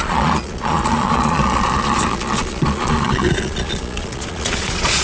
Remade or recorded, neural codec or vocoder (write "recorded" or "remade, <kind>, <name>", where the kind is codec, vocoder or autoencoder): remade, vocoder, Vocos